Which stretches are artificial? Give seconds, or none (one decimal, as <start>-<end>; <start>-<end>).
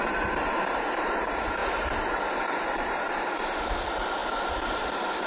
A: none